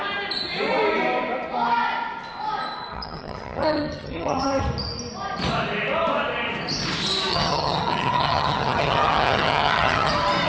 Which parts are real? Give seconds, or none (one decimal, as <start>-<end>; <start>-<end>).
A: 0.0-2.9; 4.6-7.3; 10.1-10.5